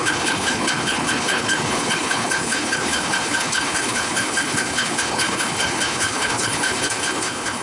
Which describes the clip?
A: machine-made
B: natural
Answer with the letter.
A